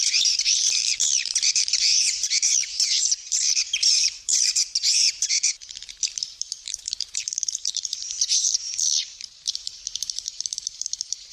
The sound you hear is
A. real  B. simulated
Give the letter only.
B